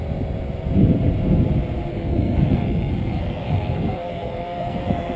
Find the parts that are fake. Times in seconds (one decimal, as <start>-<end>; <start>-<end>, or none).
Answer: 1.9-5.2